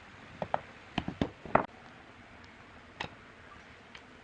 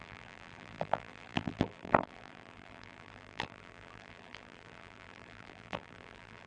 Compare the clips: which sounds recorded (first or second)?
first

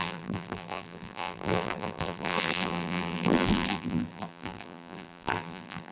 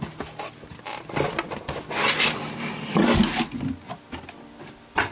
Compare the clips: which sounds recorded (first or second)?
second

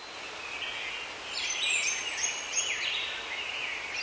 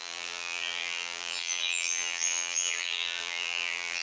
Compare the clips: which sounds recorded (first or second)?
first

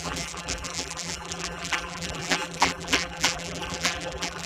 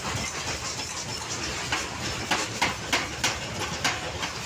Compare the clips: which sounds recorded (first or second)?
second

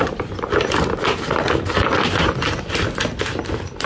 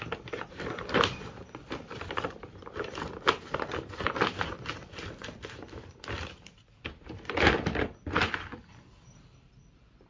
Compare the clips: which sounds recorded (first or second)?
first